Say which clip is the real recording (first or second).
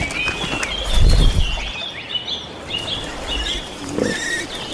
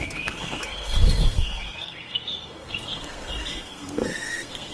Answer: first